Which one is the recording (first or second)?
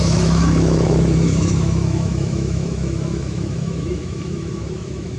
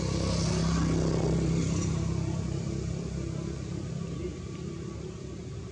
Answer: second